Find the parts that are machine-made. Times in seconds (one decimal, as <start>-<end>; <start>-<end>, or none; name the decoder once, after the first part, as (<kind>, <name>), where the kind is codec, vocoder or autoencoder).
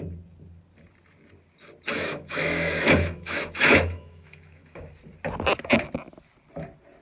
1.9-4.9 (autoencoder, DAC-VAE)